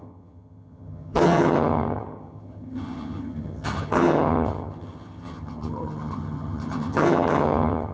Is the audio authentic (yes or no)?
no